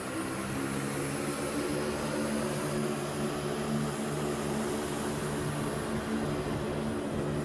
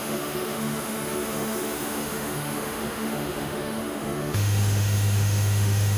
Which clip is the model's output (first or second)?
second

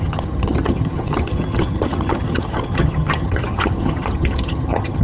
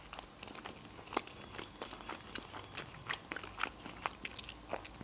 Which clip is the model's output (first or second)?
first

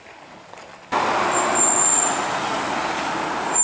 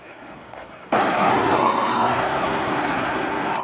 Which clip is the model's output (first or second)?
second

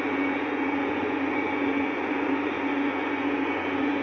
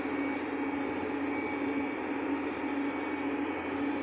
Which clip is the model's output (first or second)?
first